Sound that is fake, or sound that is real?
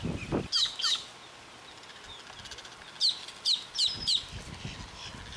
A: real